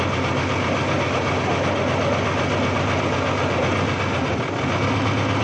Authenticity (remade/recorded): recorded